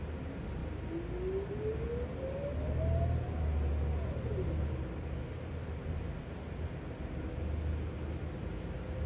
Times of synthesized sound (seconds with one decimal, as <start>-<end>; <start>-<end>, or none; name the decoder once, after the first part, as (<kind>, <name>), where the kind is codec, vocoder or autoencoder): none